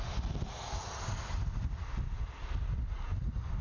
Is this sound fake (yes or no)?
no